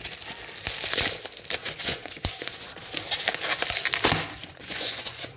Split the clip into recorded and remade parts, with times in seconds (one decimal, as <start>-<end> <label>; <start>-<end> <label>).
0.0-1.6 recorded; 1.6-2.7 remade; 2.7-4.4 recorded; 4.4-5.4 remade